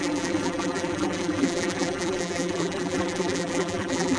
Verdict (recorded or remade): remade